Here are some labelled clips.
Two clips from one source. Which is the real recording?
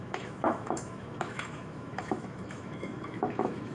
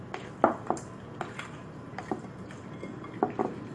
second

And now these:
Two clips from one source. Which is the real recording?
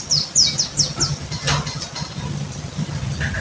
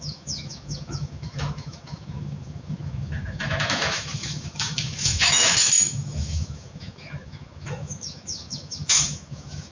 first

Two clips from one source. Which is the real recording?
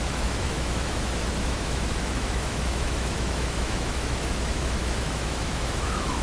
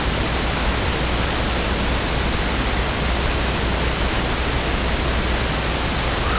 second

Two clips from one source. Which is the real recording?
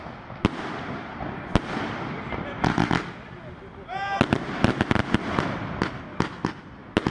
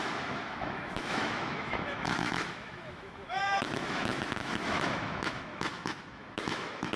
first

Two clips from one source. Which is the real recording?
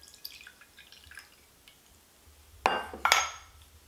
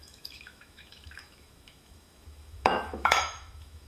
first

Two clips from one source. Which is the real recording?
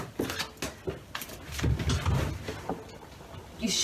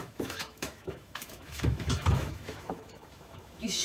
first